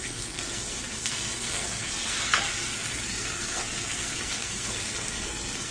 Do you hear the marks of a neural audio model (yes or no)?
yes